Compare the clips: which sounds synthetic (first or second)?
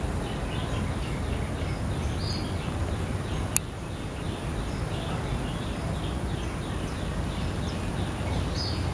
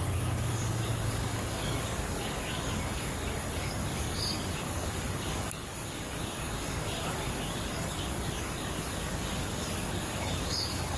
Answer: second